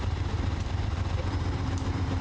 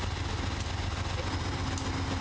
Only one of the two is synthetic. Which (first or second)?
first